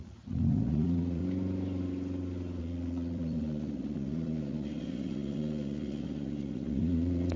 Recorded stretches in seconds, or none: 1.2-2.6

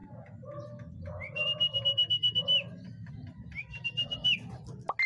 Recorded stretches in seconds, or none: 0.0-3.1; 4.2-5.1